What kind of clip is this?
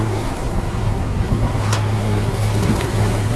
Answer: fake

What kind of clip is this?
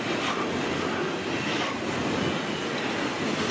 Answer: real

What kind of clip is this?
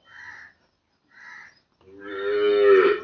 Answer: real